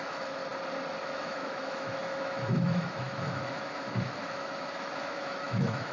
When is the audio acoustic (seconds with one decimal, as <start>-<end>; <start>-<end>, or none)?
0.4-1.0